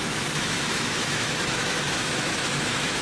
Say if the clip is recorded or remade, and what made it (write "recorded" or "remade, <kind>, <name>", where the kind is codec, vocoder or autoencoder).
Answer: remade, autoencoder, DAC-VAE